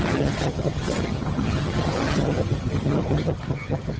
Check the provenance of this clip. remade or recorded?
remade